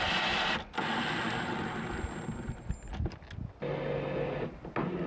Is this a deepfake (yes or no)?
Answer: no